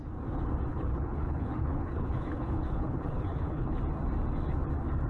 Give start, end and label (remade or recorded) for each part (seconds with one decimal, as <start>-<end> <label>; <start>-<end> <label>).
0.0-0.7 recorded; 0.7-3.8 remade; 3.8-5.1 recorded